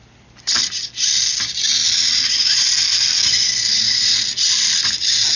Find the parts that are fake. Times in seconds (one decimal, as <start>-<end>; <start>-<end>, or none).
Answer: none